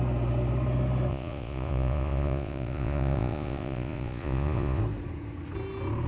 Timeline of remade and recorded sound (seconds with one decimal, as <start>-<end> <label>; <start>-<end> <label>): 0.0-1.1 recorded; 1.1-4.8 remade; 4.8-6.1 recorded

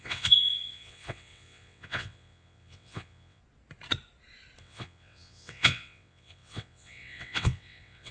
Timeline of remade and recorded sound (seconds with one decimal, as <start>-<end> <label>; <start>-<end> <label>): 0.0-3.4 remade; 3.4-4.6 recorded; 4.6-8.1 remade

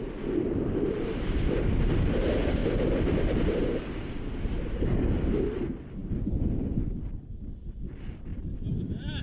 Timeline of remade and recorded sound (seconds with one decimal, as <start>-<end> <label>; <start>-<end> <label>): 0.0-9.2 recorded

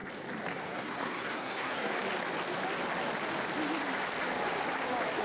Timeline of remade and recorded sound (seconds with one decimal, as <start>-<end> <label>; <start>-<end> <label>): 0.0-0.6 recorded; 0.6-2.0 remade; 2.0-5.2 recorded

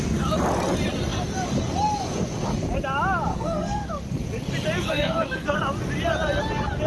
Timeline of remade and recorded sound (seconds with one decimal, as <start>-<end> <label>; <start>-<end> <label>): 0.0-3.3 recorded; 3.3-3.9 remade; 3.9-4.9 recorded; 4.9-5.6 remade; 5.6-6.9 recorded

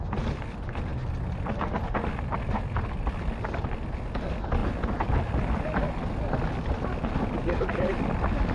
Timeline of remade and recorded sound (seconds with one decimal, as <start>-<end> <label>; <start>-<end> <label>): 0.0-8.5 recorded

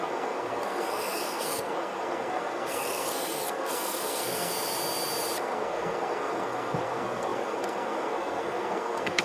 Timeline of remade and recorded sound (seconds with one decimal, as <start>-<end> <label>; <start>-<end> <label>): 0.0-4.5 remade; 4.5-5.4 recorded; 5.4-9.2 remade